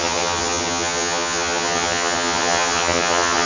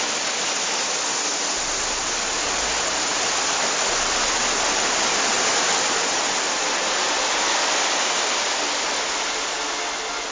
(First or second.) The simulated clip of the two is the first